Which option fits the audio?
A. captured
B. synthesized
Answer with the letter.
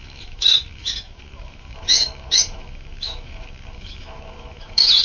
B